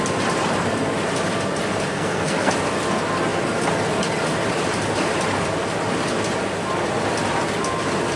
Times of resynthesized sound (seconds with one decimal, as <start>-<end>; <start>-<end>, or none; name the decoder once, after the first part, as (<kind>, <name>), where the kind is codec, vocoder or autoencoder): 1.9-2.5 (codec, SNAC)